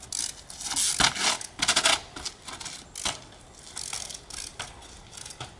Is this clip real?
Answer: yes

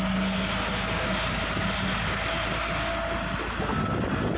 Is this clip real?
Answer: yes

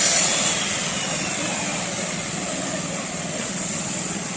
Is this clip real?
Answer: yes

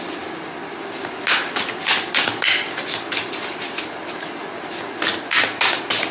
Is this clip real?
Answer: yes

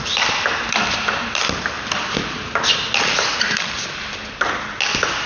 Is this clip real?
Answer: yes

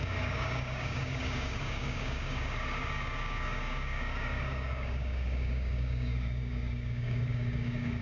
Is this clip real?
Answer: no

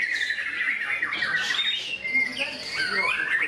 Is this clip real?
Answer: yes